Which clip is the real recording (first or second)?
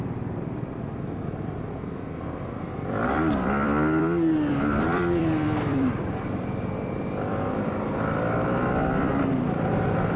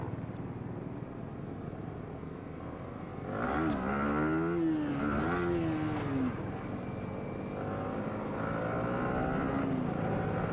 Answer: second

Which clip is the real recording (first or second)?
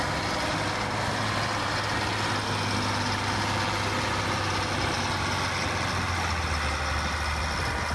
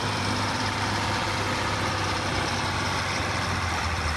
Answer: first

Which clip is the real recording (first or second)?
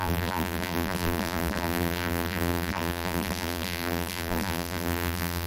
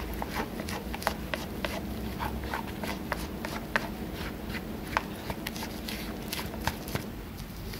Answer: second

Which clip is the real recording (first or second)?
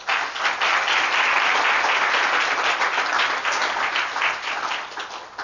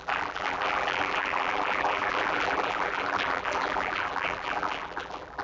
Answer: first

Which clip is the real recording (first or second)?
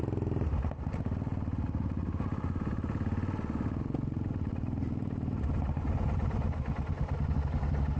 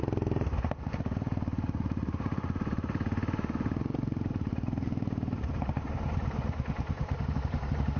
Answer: first